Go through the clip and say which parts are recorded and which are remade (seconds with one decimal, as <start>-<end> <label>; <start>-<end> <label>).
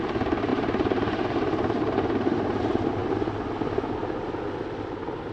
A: 0.0-0.5 recorded; 0.5-2.6 remade; 2.6-5.3 recorded